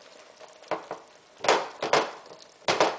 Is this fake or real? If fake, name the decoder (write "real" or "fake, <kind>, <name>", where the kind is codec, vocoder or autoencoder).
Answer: real